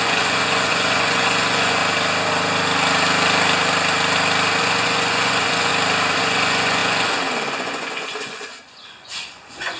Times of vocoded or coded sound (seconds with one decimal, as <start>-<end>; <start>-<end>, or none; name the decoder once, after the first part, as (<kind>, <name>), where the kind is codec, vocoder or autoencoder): 0.0-1.8 (vocoder, Vocos); 4.6-5.7; 6.2-9.8